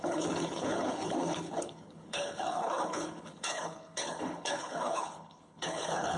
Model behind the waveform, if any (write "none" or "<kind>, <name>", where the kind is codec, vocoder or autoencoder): codec, HILCodec